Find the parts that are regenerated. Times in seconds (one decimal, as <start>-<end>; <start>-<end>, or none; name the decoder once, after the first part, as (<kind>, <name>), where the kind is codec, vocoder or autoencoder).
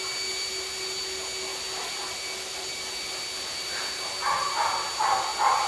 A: none